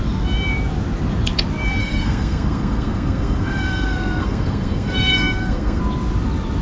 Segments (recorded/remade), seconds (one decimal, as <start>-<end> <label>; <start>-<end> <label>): 0.0-1.8 recorded; 1.8-5.8 remade; 5.8-6.6 recorded